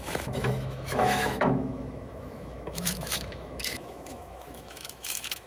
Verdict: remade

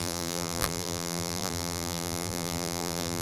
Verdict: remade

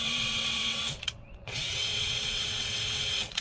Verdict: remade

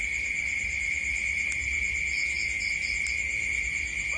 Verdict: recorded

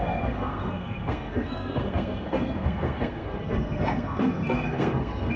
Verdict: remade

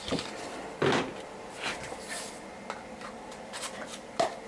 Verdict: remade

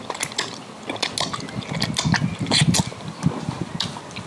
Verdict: recorded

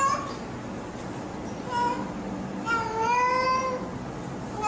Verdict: recorded